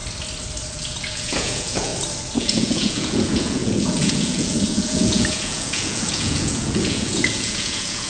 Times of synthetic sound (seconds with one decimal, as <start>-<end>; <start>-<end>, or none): 0.7-1.9; 2.4-8.1